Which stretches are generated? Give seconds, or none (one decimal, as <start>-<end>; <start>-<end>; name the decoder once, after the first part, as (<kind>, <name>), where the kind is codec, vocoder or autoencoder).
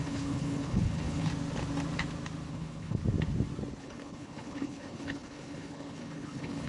0.0-1.3 (codec, HILCodec); 2.5-3.0; 3.8-6.7